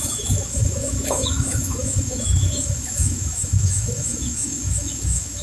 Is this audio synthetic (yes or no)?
yes